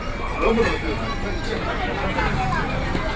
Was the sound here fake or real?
real